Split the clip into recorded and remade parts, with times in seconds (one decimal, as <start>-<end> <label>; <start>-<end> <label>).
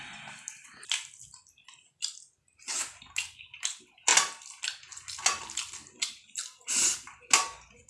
0.0-7.9 recorded